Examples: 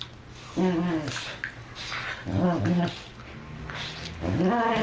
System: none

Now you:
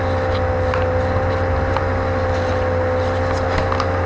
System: none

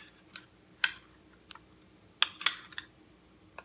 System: none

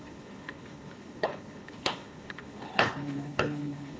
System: codec, HILCodec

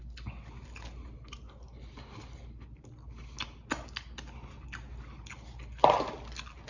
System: none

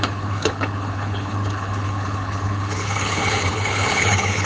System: codec, HILCodec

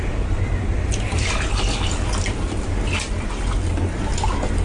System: none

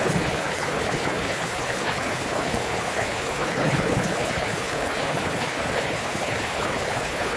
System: codec, HILCodec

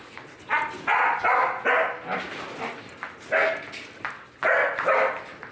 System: none